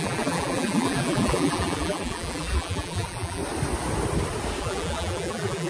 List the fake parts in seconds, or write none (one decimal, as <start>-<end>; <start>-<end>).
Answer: 0.0-3.4; 4.6-5.7

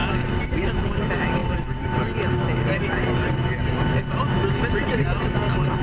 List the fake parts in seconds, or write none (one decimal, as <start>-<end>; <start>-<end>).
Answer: none

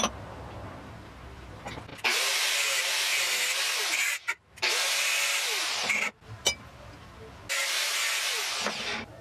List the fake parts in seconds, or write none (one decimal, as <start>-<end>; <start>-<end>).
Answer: none

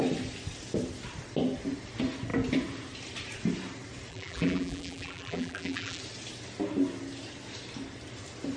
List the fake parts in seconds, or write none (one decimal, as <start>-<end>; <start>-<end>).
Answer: 4.1-6.0

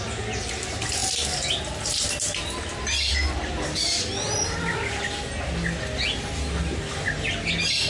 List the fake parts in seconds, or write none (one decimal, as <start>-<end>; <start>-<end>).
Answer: none

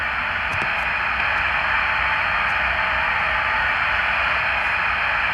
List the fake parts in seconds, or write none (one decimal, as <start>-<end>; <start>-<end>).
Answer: 3.2-4.4

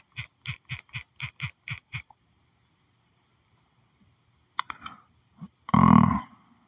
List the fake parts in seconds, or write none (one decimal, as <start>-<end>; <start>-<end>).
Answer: 1.7-2.4